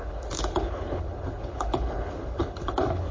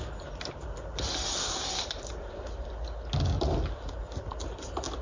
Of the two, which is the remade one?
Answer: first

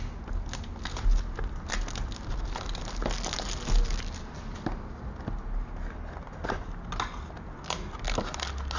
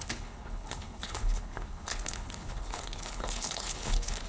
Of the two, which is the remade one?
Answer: second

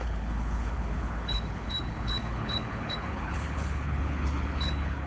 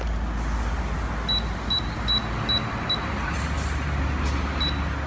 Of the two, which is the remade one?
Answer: first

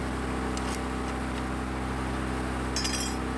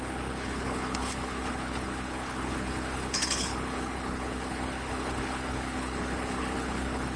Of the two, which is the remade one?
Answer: second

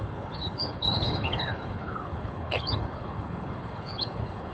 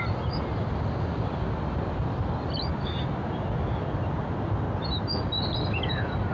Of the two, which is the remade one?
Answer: first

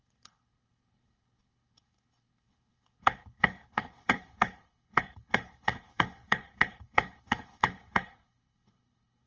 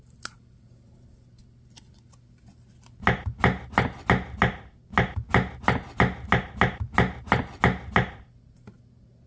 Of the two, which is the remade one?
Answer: first